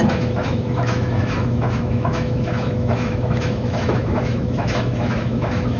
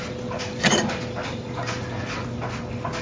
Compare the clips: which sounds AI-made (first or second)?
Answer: first